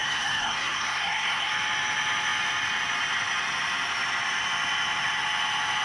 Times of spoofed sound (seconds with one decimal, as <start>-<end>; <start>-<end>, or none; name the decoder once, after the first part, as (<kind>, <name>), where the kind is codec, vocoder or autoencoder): 0.0-1.5 (codec, SNAC)